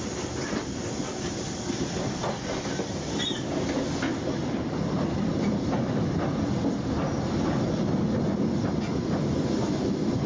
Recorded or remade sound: recorded